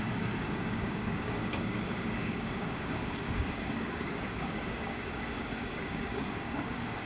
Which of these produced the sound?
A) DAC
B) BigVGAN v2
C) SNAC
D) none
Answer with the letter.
A